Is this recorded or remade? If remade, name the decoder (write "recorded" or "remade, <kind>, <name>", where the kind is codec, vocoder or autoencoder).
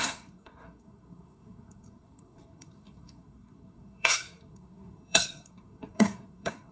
remade, codec, SNAC